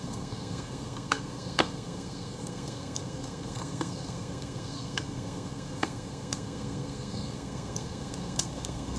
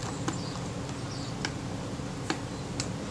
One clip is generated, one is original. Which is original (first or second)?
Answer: second